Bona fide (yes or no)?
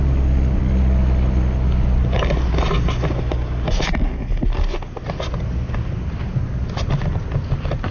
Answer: yes